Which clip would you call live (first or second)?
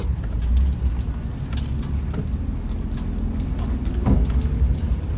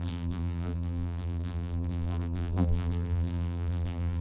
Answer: first